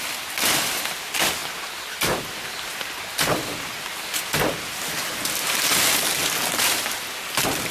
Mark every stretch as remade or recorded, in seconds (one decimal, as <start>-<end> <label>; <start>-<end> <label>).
0.0-7.7 recorded

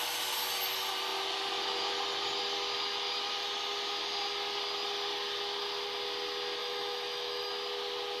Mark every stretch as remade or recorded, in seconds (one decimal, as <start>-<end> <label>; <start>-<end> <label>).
0.0-6.6 recorded; 6.6-7.5 remade; 7.5-8.2 recorded

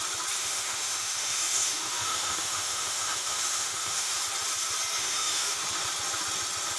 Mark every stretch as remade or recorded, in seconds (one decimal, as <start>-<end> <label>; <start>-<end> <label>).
0.0-0.4 recorded; 0.4-4.2 remade; 4.2-5.0 recorded; 5.0-5.6 remade; 5.6-6.8 recorded